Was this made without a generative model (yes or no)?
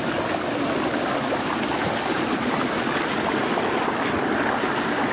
yes